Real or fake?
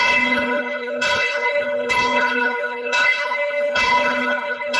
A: fake